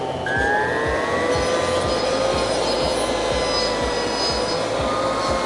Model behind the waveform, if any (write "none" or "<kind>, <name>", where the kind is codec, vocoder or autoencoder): none